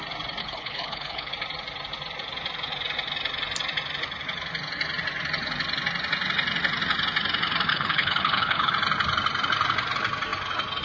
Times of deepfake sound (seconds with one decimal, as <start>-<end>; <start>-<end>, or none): 0.4-1.3; 7.7-8.7